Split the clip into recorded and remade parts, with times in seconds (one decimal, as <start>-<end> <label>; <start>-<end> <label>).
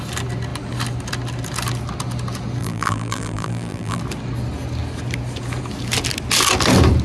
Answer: 0.0-2.6 recorded; 2.6-4.0 remade; 4.0-7.0 recorded